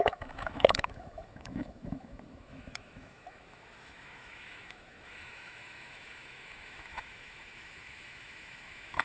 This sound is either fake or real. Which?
fake